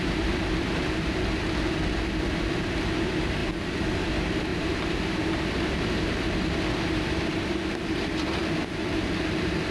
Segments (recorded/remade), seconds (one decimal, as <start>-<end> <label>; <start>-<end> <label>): 0.0-4.5 recorded; 4.5-5.3 remade; 5.3-9.7 recorded